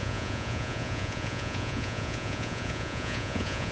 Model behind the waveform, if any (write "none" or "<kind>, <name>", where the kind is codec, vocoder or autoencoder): vocoder, Vocos